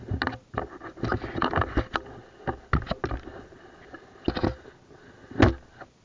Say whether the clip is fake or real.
real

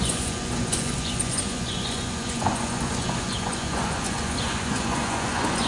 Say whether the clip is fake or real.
fake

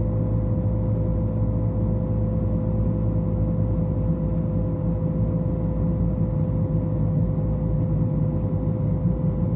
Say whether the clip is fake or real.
real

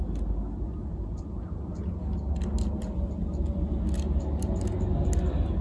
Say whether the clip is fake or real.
real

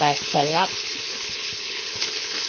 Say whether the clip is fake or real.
fake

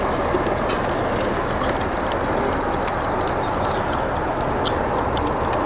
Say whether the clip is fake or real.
real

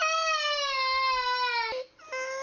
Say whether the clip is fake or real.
real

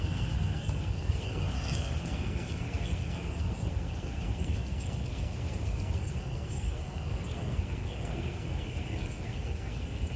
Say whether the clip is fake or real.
fake